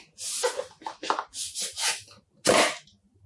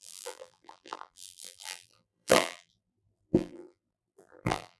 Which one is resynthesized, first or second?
second